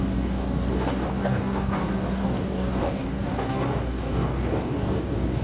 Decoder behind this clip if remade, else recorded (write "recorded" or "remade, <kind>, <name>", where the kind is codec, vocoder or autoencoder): remade, codec, DAC